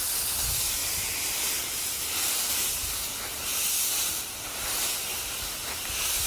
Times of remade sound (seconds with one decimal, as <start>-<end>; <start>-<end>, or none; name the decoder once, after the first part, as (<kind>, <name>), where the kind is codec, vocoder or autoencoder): none